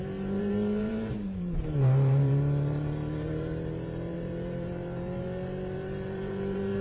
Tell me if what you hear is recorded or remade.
remade